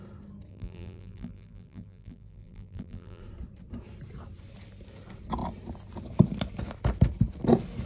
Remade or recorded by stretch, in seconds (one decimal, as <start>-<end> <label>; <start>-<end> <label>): 0.0-0.5 recorded; 0.5-3.2 remade; 3.2-7.9 recorded